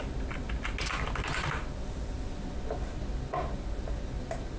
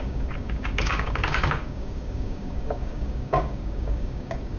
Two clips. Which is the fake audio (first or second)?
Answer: second